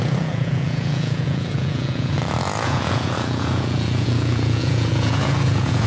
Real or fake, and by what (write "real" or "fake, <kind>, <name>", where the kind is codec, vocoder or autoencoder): fake, vocoder, Vocos